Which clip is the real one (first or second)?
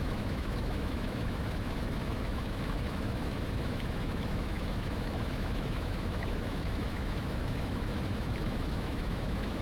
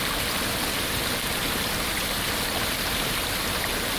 second